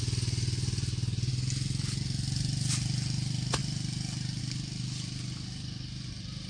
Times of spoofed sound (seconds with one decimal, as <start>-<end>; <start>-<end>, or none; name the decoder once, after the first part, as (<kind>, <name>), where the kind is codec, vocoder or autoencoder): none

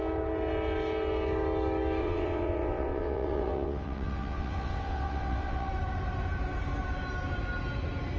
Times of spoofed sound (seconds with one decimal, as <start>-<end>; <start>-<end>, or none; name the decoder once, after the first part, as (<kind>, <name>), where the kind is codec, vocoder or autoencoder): 2.0-5.7 (vocoder, WaveNeXt)

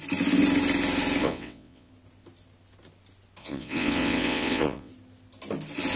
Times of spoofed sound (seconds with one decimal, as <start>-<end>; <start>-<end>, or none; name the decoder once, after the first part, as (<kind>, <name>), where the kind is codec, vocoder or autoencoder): 1.2-1.9 (vocoder, WaveNeXt); 3.4-4.9

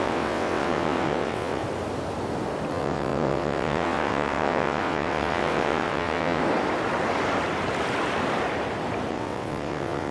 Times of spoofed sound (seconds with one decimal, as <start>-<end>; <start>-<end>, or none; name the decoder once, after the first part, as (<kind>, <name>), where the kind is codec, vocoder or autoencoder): 0.0-1.6 (vocoder, WaveNeXt); 2.7-6.4; 9.1-10.1